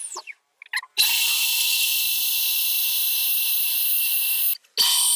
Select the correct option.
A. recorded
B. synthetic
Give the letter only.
A